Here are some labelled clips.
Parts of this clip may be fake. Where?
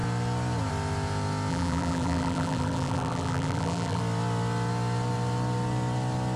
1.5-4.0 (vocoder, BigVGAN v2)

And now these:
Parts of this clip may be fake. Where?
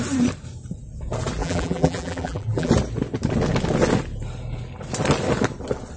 1.4-2.7 (vocoder, BigVGAN v2)